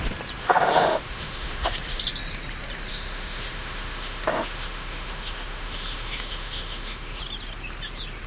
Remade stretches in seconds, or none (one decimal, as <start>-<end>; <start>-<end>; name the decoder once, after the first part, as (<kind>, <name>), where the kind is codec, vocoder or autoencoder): 0.4-2.0 (autoencoder, DAC-VAE); 2.9-7.2